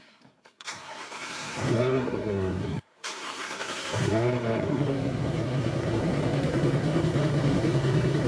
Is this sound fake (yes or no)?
yes